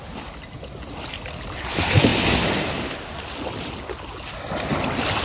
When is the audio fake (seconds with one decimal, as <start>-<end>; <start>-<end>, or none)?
none